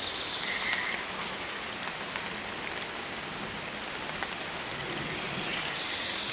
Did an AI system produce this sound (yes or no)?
no